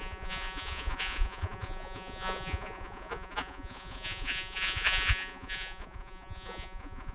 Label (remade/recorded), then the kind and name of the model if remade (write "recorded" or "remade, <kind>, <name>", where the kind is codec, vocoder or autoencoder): remade, vocoder, Vocos